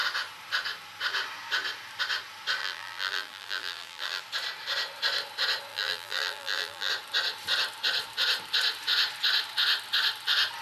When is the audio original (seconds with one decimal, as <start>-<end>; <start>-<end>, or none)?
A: 0.0-2.6; 4.2-5.7; 6.9-10.6